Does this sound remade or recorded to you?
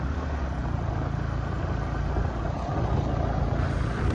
recorded